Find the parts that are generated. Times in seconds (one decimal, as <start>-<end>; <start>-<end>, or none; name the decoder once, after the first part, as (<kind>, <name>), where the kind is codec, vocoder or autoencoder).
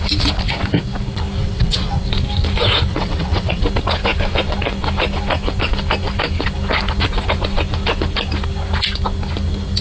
1.4-2.0 (vocoder, WaveNeXt); 2.9-3.6